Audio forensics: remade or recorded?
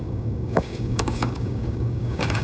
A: remade